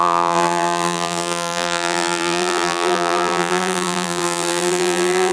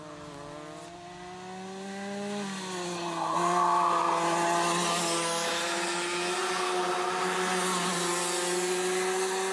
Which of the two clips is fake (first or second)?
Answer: first